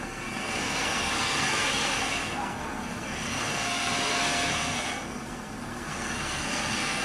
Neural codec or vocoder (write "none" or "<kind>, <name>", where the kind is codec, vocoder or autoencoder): codec, SNAC